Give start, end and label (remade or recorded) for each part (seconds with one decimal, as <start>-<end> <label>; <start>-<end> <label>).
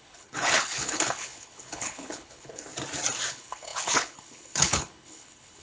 0.0-2.7 remade; 2.7-3.3 recorded; 3.3-5.6 remade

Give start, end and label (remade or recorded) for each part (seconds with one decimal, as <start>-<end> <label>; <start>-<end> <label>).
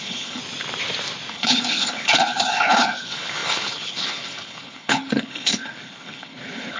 0.0-0.4 remade; 0.4-1.3 recorded; 1.3-6.8 remade